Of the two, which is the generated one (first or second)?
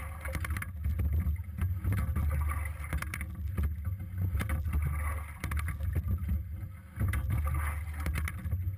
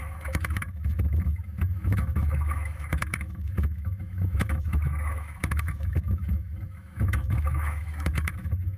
second